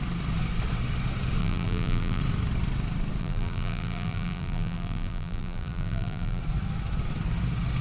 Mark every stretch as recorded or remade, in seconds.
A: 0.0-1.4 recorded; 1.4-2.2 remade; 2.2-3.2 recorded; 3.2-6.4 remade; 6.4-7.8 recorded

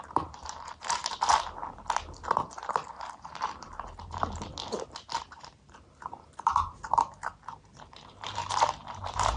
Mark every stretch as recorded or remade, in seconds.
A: 0.0-1.0 remade; 1.0-2.3 recorded; 2.3-4.2 remade; 4.2-5.2 recorded; 5.2-9.4 remade

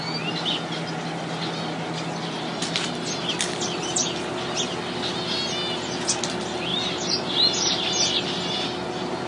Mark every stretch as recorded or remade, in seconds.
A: 0.0-6.7 recorded; 6.7-8.5 remade; 8.5-9.3 recorded

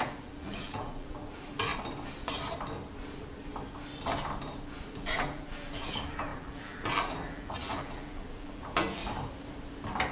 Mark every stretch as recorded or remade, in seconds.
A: 0.0-1.7 remade; 1.7-4.9 recorded; 4.9-9.0 remade; 9.0-10.1 recorded

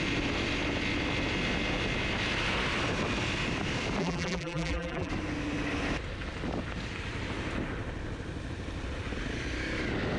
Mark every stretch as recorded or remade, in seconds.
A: 0.0-4.0 recorded; 4.0-5.1 remade; 5.1-10.2 recorded

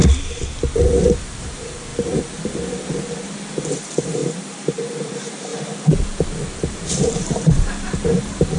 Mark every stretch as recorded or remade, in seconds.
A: 0.0-1.0 recorded; 1.0-1.9 remade; 1.9-3.7 recorded; 3.7-5.5 remade; 5.5-6.6 recorded; 6.6-8.6 remade